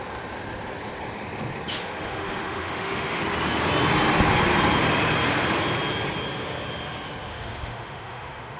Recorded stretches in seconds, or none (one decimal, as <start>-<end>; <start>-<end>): 0.0-1.8; 3.2-7.3